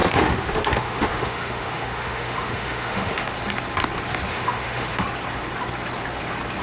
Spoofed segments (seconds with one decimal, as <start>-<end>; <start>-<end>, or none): 0.0-3.3; 4.3-5.0

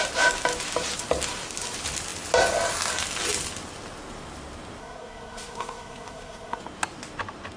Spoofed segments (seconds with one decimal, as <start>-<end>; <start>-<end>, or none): 4.8-6.6

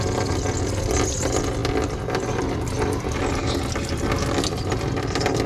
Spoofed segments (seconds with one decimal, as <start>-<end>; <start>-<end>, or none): none

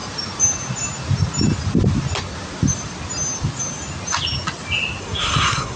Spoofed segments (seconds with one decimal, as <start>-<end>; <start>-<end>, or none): 5.0-5.8